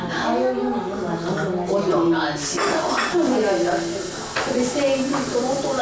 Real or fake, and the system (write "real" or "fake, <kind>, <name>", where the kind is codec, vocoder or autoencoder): real